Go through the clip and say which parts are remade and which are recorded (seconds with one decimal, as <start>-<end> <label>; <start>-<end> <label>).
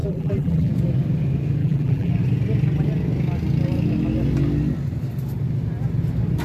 0.0-0.7 remade; 0.7-1.6 recorded; 1.6-2.1 remade; 2.1-6.4 recorded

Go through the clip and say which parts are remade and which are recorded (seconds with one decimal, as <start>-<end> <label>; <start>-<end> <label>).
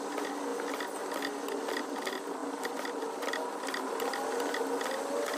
0.0-5.4 recorded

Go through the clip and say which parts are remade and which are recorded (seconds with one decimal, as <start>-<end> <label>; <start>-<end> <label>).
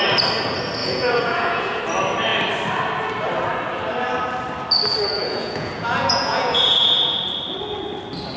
0.0-0.8 recorded; 0.8-1.8 remade; 1.8-5.1 recorded; 5.1-7.2 remade; 7.2-8.4 recorded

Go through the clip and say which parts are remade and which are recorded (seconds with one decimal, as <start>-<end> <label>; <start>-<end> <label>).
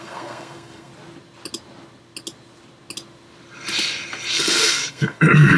0.0-0.9 remade; 0.9-4.3 recorded; 4.3-5.6 remade